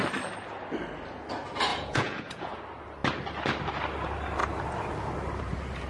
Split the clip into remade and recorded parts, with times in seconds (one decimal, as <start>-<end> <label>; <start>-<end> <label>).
0.0-1.7 recorded; 1.7-2.6 remade; 2.6-5.9 recorded